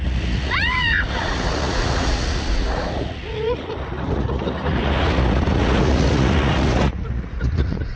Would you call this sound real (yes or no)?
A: no